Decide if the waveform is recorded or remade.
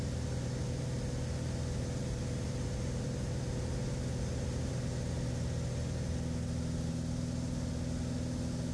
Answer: recorded